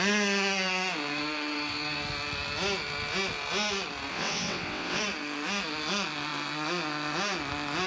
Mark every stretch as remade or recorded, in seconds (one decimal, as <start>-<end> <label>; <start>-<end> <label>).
0.0-4.1 recorded; 4.1-5.0 remade; 5.0-7.9 recorded